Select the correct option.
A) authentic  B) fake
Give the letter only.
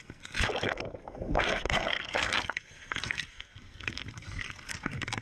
B